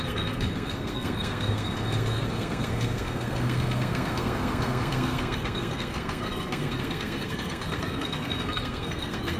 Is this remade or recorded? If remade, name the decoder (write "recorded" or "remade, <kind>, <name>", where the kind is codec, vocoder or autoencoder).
remade, codec, SNAC